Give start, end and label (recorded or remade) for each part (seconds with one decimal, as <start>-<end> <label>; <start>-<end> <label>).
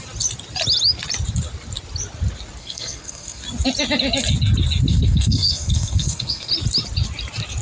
0.0-2.6 recorded; 2.6-3.4 remade; 3.4-4.9 recorded; 4.9-6.5 remade; 6.5-7.6 recorded